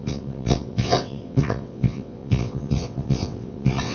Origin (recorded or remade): remade